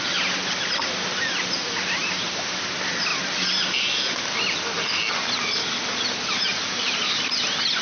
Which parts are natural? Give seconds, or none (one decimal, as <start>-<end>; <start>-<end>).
0.0-2.0; 2.6-6.5; 7.3-7.8